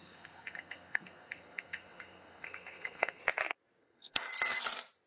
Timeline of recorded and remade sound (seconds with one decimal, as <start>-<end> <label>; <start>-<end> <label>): 0.0-3.2 remade; 3.2-3.8 recorded; 3.8-4.2 remade; 4.2-5.1 recorded